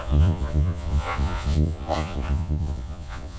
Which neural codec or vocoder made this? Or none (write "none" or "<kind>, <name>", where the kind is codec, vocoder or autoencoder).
vocoder, Vocos